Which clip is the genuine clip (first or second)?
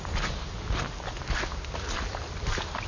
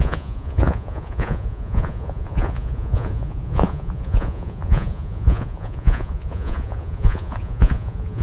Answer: first